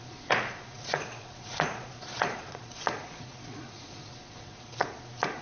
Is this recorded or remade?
remade